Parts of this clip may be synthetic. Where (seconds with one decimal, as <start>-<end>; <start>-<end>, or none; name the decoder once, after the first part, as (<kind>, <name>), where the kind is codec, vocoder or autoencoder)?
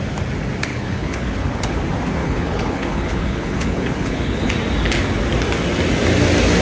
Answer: 0.7-1.8 (codec, HILCodec); 2.2-4.5